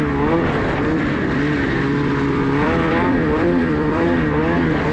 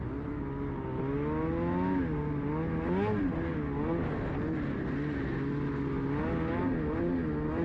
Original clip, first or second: second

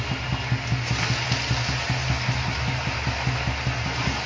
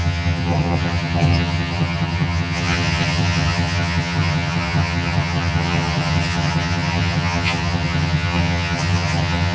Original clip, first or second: first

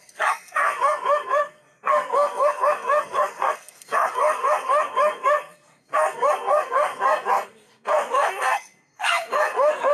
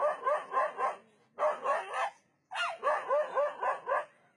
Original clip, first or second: second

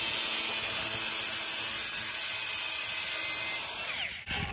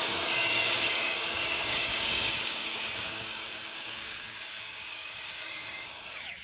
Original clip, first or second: first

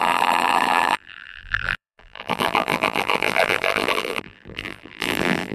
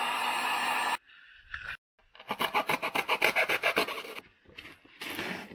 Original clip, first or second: second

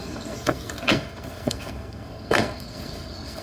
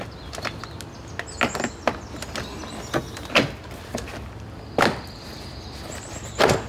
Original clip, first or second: second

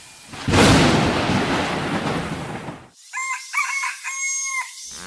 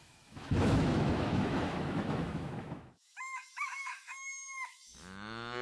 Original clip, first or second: first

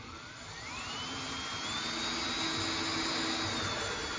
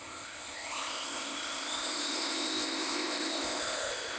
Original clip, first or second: first